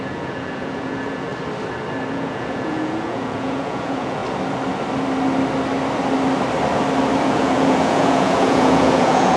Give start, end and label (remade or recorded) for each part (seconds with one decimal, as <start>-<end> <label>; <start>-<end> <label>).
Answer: 0.0-1.3 remade; 1.3-2.1 recorded; 2.1-4.2 remade; 4.2-7.2 recorded; 7.2-9.4 remade